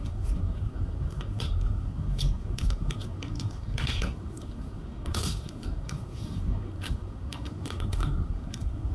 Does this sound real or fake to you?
fake